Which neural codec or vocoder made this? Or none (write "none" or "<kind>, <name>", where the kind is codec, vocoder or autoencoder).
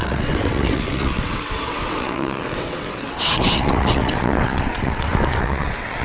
vocoder, WaveNeXt